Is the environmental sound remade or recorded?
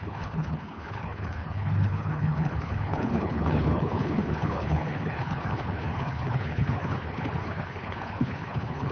remade